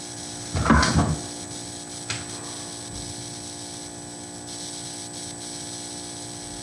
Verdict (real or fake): real